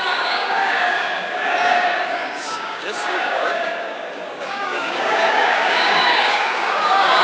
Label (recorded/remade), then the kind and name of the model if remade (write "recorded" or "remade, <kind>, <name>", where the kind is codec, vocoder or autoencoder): remade, codec, DAC